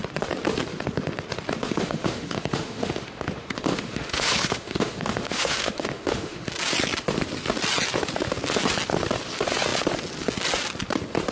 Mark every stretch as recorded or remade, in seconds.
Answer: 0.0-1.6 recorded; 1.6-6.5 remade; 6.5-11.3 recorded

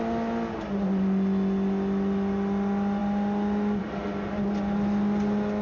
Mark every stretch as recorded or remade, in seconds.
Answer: 0.0-5.6 recorded